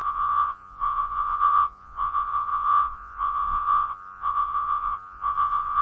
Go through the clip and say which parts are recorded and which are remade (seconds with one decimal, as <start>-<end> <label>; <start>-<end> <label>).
0.0-5.8 remade